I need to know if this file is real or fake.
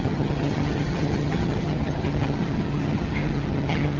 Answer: fake